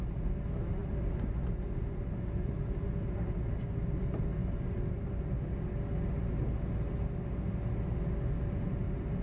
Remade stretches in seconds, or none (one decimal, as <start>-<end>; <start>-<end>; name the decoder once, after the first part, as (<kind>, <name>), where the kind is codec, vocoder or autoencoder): none